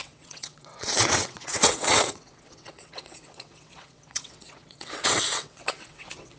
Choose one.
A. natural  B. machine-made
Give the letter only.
B